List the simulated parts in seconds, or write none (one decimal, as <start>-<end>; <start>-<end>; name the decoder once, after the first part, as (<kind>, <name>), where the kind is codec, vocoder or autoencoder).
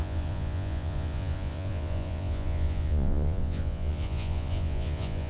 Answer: 0.0-5.3 (vocoder, Vocos)